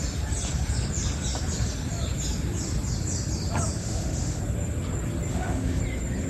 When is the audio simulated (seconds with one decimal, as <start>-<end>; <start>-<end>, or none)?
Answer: 3.8-4.4; 5.3-5.8